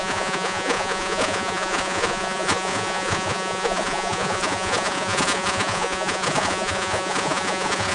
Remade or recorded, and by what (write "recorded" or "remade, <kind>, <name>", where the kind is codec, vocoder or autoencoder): remade, vocoder, Vocos